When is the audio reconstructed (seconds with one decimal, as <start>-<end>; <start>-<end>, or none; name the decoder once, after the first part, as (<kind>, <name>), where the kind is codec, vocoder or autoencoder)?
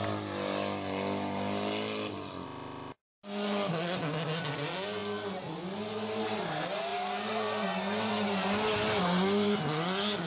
none